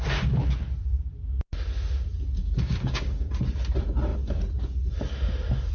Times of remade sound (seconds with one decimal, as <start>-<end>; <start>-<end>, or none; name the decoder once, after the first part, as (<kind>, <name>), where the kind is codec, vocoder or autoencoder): 2.4-3.3 (codec, DAC)